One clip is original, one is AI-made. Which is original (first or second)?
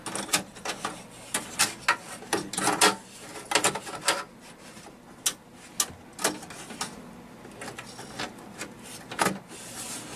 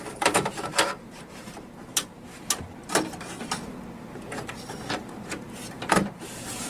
first